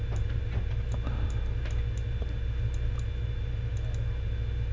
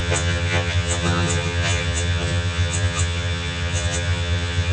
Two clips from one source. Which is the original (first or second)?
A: first